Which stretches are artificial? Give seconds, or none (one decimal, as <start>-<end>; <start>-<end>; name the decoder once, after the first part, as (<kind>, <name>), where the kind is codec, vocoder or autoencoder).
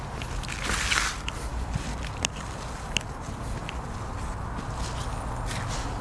none